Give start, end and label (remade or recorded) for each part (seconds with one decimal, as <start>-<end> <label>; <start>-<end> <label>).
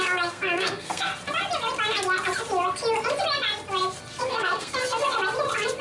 0.0-1.1 remade; 1.1-4.2 recorded; 4.2-5.2 remade; 5.2-5.8 recorded